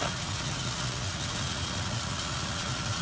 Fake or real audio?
fake